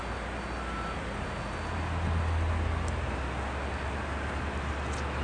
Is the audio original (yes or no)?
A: yes